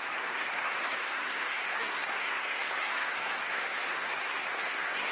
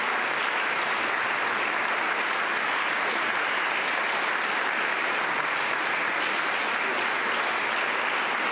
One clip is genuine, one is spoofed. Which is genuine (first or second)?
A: second